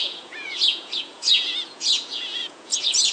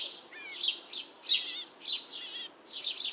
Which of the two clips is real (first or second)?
second